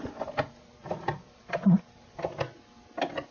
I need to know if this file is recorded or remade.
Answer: recorded